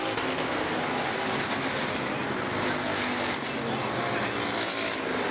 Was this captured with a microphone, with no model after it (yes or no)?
yes